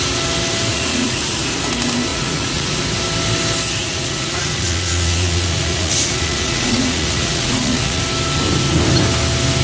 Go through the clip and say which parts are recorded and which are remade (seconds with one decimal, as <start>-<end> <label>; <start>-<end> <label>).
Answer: 0.0-0.7 recorded; 0.7-1.5 remade; 1.5-2.1 recorded; 2.1-2.8 remade; 2.8-3.8 recorded; 3.8-8.0 remade; 8.0-9.6 recorded